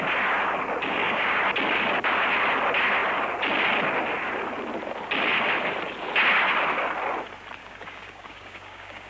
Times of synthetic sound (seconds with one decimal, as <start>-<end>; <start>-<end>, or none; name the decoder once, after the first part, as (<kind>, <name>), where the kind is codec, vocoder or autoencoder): 0.9-1.4 (codec, DAC); 7.6-9.1